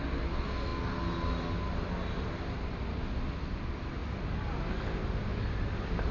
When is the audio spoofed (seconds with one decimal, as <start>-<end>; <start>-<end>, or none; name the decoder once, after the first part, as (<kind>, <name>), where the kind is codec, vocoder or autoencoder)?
none